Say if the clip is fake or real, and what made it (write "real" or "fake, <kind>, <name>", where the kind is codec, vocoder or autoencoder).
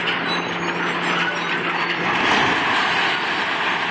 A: real